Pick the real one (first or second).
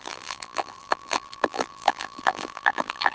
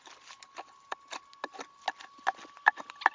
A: second